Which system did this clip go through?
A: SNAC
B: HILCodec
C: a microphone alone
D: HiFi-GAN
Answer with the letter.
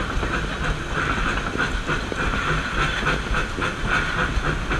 C